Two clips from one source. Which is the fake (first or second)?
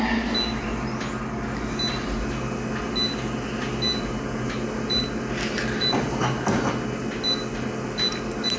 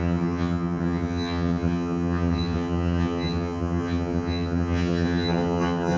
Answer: second